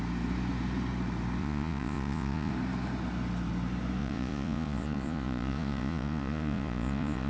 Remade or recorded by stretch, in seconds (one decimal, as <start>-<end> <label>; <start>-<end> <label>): 0.0-1.4 recorded; 1.4-2.5 remade; 2.5-4.0 recorded; 4.0-7.3 remade